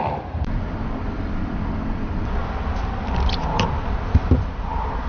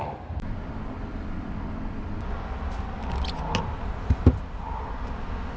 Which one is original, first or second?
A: second